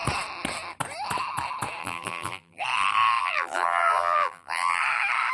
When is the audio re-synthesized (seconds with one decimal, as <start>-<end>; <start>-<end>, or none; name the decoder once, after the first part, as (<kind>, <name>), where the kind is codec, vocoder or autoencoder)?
1.8-2.6 (vocoder, BigVGAN v2); 3.2-4.8